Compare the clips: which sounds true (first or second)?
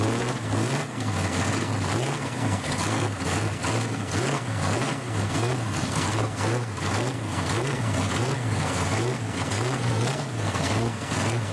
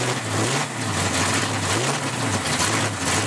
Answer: second